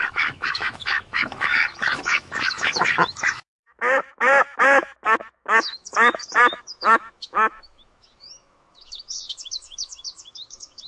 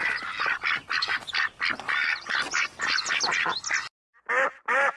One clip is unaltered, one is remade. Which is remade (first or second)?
first